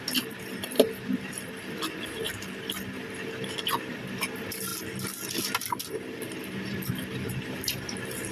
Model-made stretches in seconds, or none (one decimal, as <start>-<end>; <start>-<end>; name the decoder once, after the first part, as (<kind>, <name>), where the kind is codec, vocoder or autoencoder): 0.0-4.7 (vocoder, BigVGAN v2); 5.9-8.3